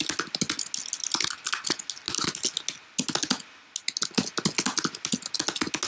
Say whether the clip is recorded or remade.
recorded